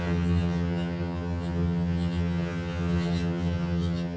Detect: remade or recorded remade